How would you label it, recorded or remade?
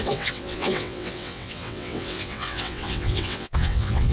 remade